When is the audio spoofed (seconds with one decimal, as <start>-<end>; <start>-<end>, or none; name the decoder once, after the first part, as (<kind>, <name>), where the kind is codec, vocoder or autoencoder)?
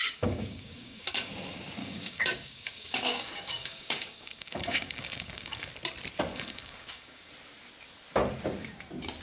0.0-1.3 (codec, DAC); 1.8-5.7; 6.3-7.3